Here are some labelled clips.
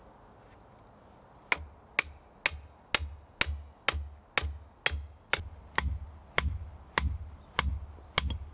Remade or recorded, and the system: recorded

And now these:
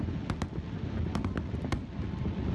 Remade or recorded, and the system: recorded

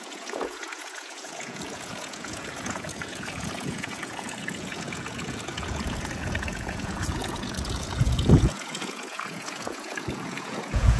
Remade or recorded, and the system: remade, vocoder, Vocos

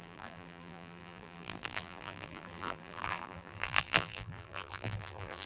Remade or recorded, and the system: remade, vocoder, BigVGAN v2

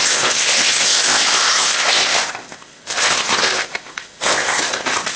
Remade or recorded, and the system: remade, codec, ZipCodec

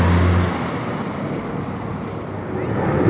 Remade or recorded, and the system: recorded